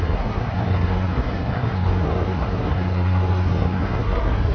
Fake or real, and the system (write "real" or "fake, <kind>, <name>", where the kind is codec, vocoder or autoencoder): fake, codec, SNAC